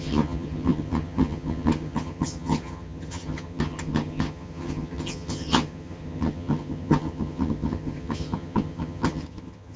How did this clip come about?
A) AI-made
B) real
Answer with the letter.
A